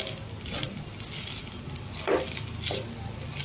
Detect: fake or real real